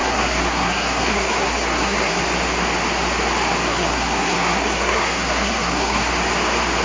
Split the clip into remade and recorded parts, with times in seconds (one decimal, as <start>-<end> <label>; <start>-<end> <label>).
0.0-2.2 remade; 2.2-3.7 recorded; 3.7-6.1 remade; 6.1-6.8 recorded